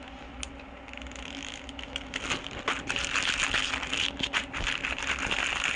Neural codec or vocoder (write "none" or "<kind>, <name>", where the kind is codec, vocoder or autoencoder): none